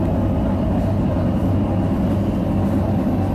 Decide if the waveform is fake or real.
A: real